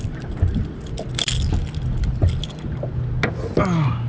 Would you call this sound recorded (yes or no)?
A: yes